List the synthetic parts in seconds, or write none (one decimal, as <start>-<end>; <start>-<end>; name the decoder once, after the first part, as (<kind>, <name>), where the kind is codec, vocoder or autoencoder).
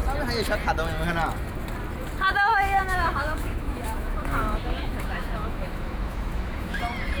2.5-6.8 (autoencoder, DAC-VAE)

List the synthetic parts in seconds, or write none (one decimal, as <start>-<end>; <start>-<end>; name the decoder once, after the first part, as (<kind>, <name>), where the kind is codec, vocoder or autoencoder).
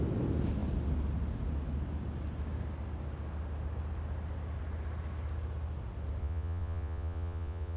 6.2-7.8 (vocoder, Vocos)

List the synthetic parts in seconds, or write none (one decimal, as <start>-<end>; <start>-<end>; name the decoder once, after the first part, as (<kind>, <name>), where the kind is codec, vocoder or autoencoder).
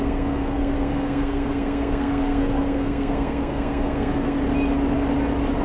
0.0-4.4 (codec, SNAC)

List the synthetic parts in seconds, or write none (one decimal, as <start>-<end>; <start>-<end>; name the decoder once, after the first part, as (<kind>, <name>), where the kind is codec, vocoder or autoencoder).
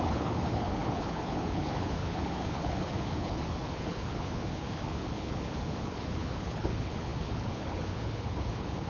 0.0-8.9 (codec, HILCodec)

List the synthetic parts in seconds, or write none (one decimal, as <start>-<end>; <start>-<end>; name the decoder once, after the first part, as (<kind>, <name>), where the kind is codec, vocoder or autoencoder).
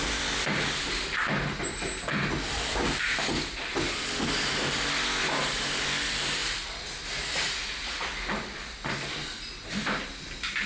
none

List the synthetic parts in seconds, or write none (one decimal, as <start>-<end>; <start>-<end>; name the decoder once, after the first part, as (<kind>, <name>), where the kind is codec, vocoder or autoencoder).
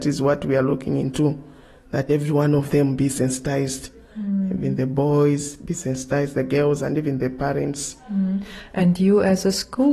0.7-2.1 (autoencoder, DAC-VAE); 4.6-8.8